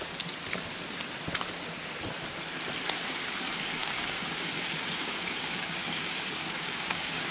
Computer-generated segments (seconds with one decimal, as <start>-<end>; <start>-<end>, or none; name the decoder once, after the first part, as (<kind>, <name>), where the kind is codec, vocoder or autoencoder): 3.8-7.3 (codec, DAC)